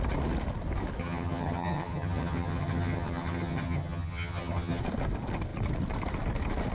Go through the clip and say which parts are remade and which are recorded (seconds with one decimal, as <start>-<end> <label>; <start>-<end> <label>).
0.0-1.0 recorded; 1.0-4.8 remade; 4.8-6.7 recorded